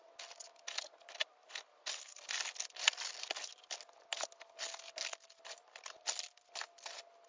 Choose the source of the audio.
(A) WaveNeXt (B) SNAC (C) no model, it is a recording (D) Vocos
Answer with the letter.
C